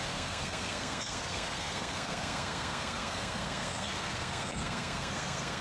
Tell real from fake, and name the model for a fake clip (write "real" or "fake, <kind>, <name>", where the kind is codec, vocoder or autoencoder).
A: fake, codec, SNAC